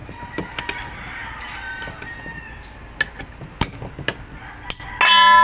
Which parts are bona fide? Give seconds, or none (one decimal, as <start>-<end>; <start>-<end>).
0.0-5.4